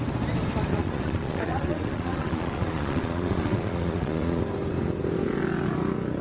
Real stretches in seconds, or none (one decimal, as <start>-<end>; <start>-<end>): 0.0-0.7; 4.4-6.2